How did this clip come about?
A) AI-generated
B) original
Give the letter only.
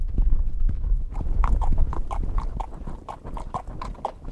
B